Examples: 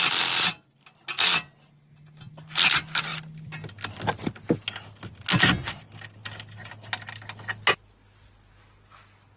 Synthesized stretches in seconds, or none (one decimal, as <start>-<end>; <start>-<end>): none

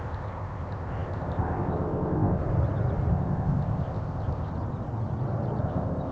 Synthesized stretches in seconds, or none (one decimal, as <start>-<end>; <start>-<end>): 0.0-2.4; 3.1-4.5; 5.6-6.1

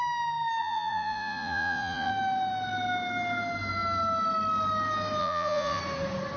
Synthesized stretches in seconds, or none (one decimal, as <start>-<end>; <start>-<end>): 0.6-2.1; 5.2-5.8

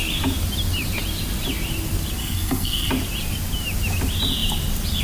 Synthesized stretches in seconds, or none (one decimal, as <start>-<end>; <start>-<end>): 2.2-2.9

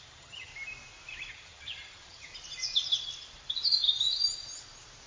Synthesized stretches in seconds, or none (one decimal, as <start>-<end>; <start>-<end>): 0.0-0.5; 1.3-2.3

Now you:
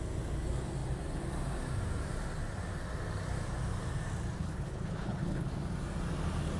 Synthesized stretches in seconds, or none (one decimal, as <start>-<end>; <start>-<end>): 4.4-5.5

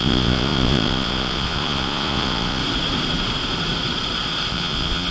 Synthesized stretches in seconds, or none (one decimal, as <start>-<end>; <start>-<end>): 0.0-2.6; 4.5-5.1